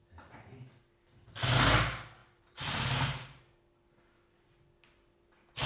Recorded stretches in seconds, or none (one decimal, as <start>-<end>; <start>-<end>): 0.0-2.2; 3.4-5.7